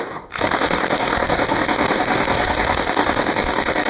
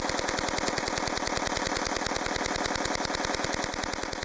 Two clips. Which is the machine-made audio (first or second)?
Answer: first